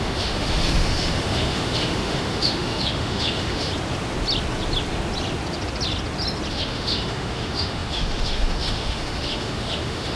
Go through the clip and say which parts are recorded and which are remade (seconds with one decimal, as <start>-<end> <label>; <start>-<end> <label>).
0.0-3.7 remade; 3.7-6.5 recorded; 6.5-10.2 remade